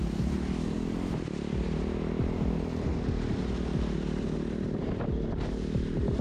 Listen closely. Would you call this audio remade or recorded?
recorded